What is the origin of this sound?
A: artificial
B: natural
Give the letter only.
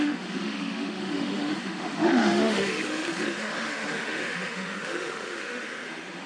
A